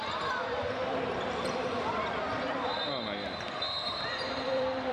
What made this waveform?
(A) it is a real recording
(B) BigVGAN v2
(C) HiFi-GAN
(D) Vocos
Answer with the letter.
B